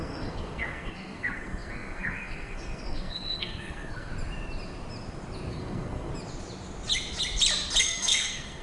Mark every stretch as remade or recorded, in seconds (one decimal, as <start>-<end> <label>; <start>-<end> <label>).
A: 0.0-4.1 remade; 4.1-5.5 recorded; 5.5-6.1 remade; 6.1-7.8 recorded; 7.8-8.6 remade